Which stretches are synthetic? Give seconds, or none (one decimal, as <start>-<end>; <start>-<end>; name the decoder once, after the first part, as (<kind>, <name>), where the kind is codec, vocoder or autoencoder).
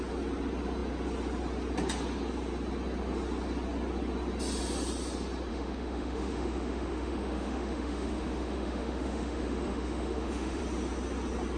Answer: 5.5-10.6 (autoencoder, DAC-VAE)